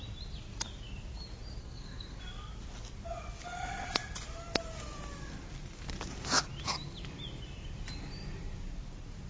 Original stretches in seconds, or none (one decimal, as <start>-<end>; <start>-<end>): 0.0-1.6; 2.2-9.3

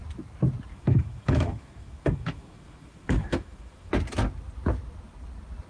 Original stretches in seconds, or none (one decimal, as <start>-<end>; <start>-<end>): 0.0-0.7; 3.9-5.7